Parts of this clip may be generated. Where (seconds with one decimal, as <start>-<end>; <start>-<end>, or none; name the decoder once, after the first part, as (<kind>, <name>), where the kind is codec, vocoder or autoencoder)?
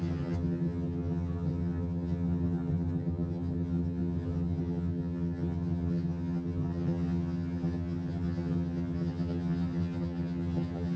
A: 0.0-11.0 (vocoder, HiFi-GAN)